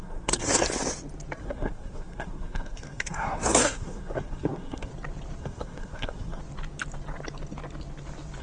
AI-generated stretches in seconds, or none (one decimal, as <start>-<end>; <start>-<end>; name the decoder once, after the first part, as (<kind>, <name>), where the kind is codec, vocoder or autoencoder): 0.0-0.6 (codec, SNAC); 1.4-4.9; 5.4-6.4